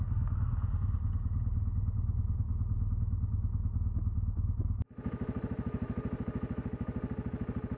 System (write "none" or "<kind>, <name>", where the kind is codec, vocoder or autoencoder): none